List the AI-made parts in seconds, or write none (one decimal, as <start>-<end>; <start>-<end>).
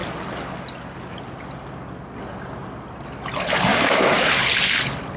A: 3.7-4.3